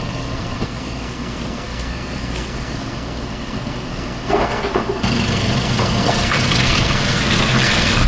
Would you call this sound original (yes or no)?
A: no